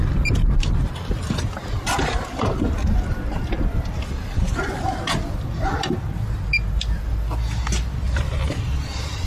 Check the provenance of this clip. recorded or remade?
recorded